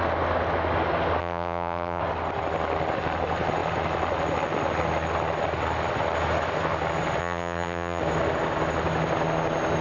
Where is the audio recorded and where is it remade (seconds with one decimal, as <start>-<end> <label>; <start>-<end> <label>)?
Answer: 0.0-1.2 recorded; 1.2-2.0 remade; 2.0-7.2 recorded; 7.2-8.0 remade; 8.0-9.8 recorded